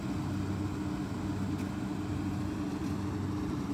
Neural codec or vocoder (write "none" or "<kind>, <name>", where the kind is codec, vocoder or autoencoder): none